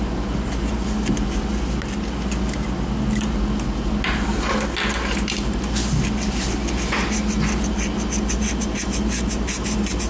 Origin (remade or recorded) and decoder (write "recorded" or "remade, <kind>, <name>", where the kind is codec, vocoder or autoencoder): recorded